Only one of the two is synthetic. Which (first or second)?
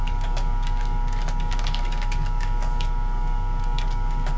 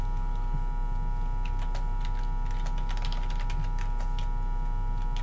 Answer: first